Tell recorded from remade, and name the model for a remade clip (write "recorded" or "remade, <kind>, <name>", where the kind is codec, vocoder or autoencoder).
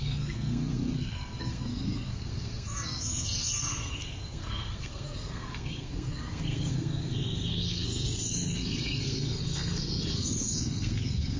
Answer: remade, codec, SNAC